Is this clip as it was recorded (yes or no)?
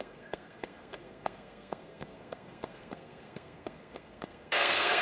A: no